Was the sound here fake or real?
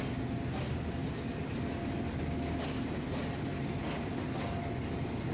real